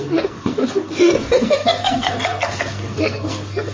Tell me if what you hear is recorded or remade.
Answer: remade